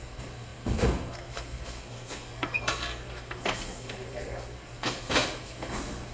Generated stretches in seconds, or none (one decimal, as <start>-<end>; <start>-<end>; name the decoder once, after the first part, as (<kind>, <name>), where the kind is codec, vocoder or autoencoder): 0.0-6.1 (codec, SNAC)

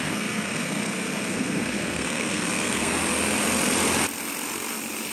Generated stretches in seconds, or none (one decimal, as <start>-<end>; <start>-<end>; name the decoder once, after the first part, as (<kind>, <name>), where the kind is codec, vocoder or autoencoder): 0.0-3.0 (codec, SNAC)

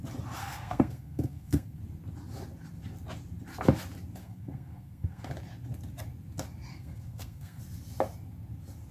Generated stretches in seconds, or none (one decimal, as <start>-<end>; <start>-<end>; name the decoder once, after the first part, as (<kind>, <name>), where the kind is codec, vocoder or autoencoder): 0.4-1.8 (codec, SNAC); 4.2-5.3; 6.7-7.6

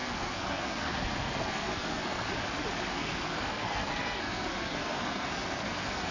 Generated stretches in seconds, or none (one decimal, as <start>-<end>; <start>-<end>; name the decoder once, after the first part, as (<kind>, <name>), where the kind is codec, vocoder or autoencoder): 0.0-2.3 (codec, SNAC); 2.9-6.1